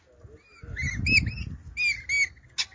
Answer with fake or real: real